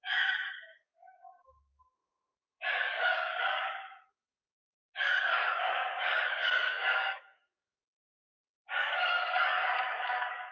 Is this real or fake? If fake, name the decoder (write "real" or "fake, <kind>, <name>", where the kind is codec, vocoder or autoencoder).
fake, codec, DAC